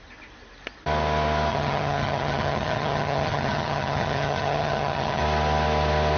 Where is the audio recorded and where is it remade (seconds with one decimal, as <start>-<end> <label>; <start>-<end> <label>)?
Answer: 0.0-1.5 recorded; 1.5-5.2 remade; 5.2-6.2 recorded